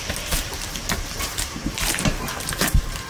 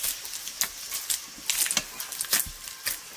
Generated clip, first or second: first